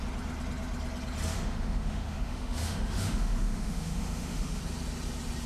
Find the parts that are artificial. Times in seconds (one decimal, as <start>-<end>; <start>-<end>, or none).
1.3-4.6